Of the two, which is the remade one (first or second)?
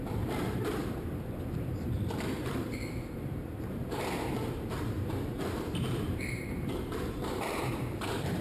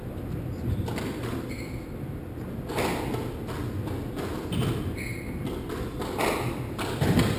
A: first